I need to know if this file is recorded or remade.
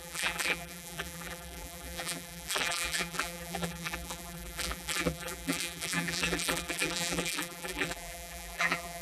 remade